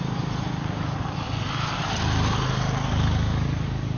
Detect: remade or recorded recorded